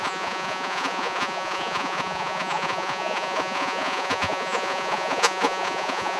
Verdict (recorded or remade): remade